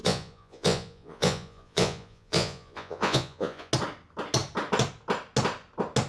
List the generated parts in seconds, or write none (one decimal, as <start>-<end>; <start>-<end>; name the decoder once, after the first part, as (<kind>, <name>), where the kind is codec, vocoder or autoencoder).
0.0-3.7 (vocoder, Vocos)